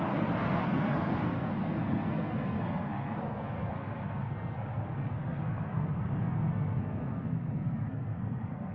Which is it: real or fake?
fake